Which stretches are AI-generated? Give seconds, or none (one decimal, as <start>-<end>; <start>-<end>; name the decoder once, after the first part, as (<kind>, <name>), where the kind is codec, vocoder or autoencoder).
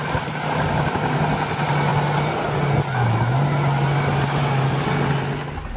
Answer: none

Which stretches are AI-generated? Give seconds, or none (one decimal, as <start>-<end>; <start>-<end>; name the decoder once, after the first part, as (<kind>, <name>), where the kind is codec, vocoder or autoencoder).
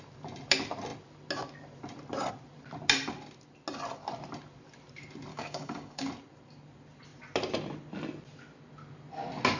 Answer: 5.3-6.1 (codec, DAC)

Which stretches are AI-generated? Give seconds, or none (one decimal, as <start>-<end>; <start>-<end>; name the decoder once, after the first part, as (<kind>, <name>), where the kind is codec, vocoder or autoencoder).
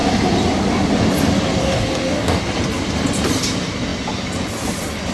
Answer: 1.6-2.4 (codec, DAC)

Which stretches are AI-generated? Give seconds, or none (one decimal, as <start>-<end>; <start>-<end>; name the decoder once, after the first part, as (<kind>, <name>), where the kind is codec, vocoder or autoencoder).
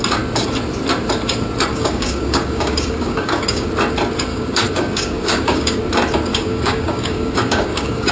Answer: 1.7-3.7 (codec, DAC); 4.3-5.8; 6.3-8.1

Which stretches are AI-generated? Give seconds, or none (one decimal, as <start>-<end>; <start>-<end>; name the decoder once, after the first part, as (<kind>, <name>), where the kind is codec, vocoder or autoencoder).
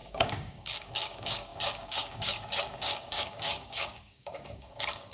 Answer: 0.0-5.1 (codec, DAC)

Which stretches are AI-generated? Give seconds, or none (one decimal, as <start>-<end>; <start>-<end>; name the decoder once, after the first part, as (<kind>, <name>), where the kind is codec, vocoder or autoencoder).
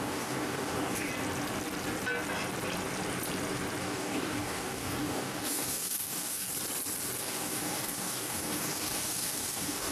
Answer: 0.0-1.1 (codec, DAC); 3.8-6.5; 7.2-9.9